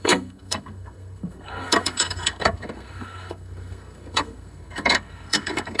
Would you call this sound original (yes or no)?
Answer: no